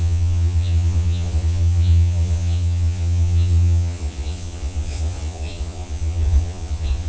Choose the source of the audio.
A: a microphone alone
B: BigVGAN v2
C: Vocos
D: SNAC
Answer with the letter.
C